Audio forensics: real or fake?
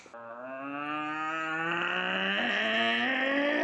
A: real